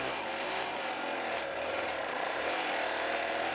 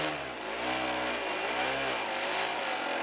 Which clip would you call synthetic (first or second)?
first